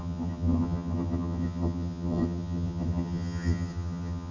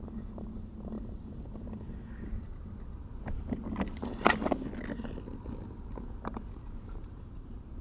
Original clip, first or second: second